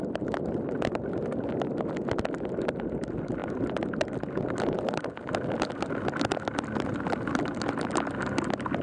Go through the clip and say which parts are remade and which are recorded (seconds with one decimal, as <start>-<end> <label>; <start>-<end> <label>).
0.0-8.8 recorded